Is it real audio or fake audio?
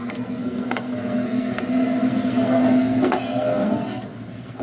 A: fake